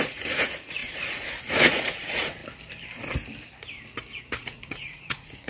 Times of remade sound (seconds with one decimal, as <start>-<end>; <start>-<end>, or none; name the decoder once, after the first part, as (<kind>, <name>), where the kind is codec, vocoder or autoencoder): 0.0-2.4 (vocoder, Vocos); 4.2-5.5